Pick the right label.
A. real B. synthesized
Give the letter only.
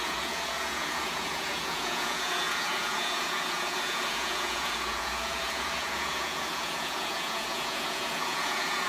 B